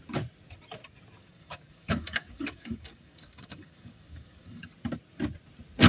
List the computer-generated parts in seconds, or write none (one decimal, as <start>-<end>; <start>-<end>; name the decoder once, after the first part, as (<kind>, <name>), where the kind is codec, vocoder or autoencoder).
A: 1.2-4.7 (codec, DAC)